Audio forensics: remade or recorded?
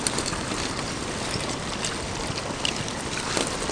recorded